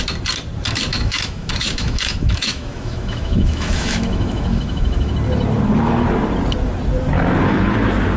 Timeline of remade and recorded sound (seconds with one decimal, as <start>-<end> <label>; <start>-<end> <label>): 0.0-0.9 recorded; 0.9-5.1 remade; 5.1-8.2 recorded